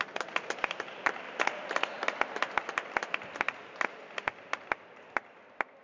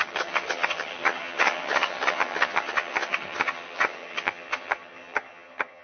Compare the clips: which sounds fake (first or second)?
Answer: second